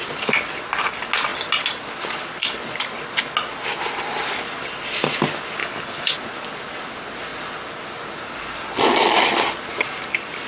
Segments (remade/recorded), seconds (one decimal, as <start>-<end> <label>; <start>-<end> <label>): 0.0-5.6 recorded; 5.6-6.1 remade; 6.1-10.5 recorded